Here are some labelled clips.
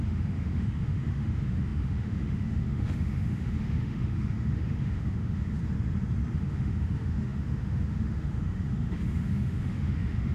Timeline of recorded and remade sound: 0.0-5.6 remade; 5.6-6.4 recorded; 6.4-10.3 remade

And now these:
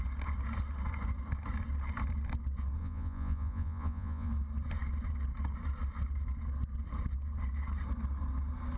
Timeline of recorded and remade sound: 0.0-2.8 recorded; 2.8-4.3 remade; 4.3-8.8 recorded